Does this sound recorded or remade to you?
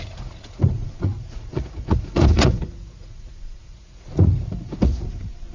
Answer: remade